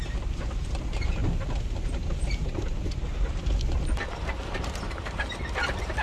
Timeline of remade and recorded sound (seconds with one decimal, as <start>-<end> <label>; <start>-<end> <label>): 0.0-1.2 remade; 1.2-4.8 recorded; 4.8-6.0 remade